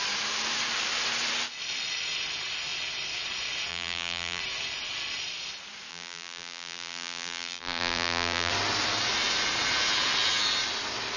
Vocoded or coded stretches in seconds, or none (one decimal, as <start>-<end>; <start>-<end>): 3.7-4.4; 5.9-8.5